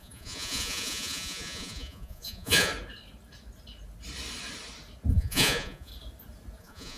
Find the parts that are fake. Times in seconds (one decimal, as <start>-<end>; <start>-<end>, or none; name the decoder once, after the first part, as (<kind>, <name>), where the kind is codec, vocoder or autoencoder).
0.0-2.7 (vocoder, Vocos); 5.1-5.9; 6.6-7.0